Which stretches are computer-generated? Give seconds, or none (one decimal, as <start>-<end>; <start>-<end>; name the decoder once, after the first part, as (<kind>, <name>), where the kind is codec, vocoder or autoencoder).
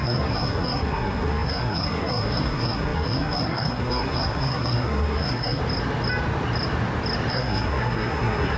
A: 0.0-5.6 (codec, SNAC); 7.3-8.6